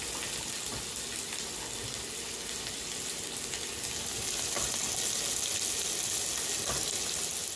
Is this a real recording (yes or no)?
yes